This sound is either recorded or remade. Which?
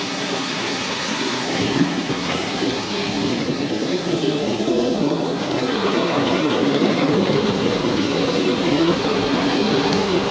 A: remade